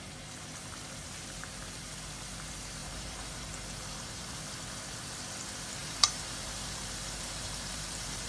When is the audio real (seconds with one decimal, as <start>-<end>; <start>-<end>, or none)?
0.0-2.8; 4.4-5.8